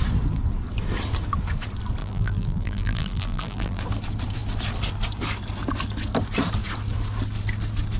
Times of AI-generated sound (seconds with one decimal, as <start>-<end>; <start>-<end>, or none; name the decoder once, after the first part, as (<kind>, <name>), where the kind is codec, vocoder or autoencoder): 2.0-3.8 (vocoder, BigVGAN v2)